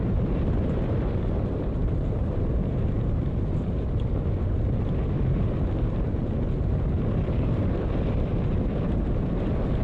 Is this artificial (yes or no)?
yes